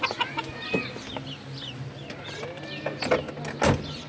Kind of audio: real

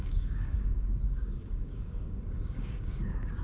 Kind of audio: fake